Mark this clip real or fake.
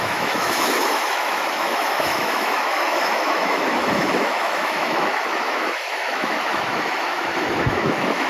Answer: fake